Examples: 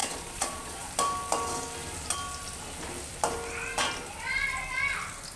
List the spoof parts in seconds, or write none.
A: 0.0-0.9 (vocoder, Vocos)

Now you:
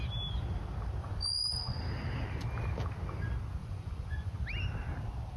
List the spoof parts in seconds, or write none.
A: 1.0-1.8 (vocoder, Vocos); 3.6-4.3